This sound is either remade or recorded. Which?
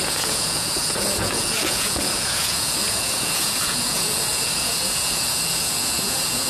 remade